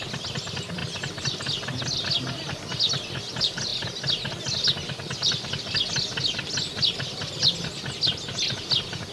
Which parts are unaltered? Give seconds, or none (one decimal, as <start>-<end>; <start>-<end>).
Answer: 0.0-9.1